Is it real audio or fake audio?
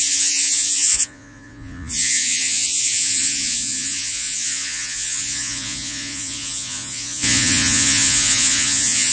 fake